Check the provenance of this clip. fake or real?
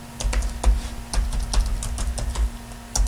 real